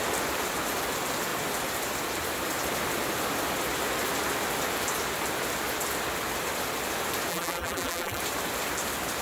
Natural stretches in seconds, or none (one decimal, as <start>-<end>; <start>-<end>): 0.0-7.3; 8.2-9.2